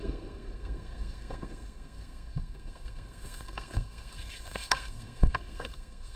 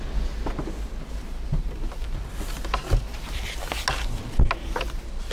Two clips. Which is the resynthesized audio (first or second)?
first